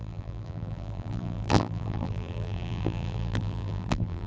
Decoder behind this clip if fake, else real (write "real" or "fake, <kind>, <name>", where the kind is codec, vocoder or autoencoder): fake, vocoder, BigVGAN v2